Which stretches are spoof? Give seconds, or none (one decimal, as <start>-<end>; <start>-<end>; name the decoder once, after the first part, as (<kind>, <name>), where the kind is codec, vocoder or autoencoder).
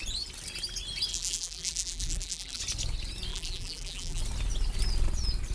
1.1-2.6 (vocoder, BigVGAN v2); 3.3-4.2